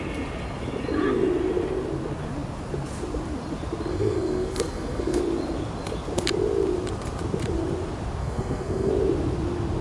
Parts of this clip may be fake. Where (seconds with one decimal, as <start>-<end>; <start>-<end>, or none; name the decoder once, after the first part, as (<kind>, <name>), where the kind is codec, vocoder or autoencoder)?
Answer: 3.9-5.2 (codec, SNAC); 8.2-8.9